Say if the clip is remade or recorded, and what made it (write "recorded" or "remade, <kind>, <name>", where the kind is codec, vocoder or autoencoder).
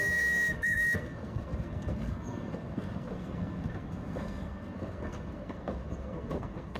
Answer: remade, codec, SNAC